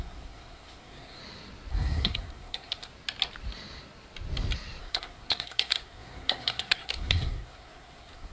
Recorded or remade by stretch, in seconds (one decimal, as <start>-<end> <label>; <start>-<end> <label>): 0.0-1.2 remade; 1.2-1.7 recorded; 1.7-2.9 remade; 2.9-4.8 recorded; 4.8-8.3 remade